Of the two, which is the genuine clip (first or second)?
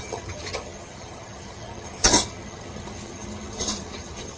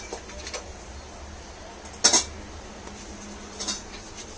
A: second